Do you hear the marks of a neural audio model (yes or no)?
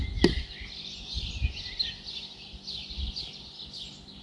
no